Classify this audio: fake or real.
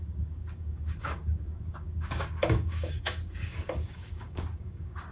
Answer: fake